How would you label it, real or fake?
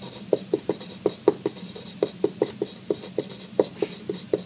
real